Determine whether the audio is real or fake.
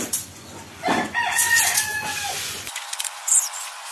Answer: fake